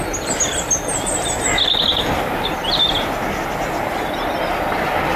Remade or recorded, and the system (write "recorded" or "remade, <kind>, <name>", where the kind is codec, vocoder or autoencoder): recorded